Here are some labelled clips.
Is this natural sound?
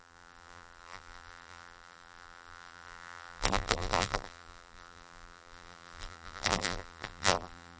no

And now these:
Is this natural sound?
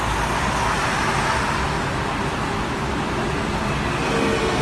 yes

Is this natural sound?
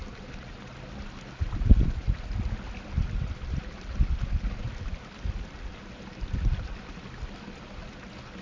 yes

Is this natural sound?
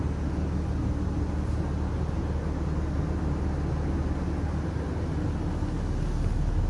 yes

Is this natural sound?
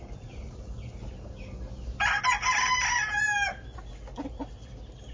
yes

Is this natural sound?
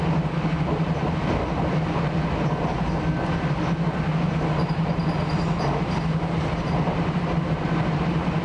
no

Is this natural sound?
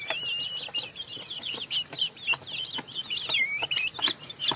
yes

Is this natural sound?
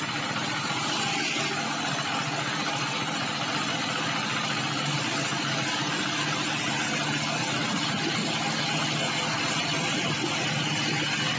yes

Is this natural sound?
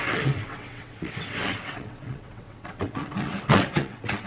no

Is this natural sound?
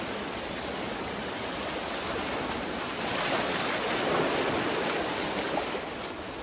yes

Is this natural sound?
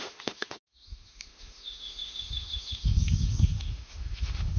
no